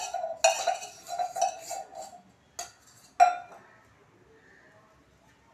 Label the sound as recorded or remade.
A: recorded